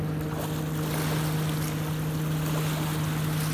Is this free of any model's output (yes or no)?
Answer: yes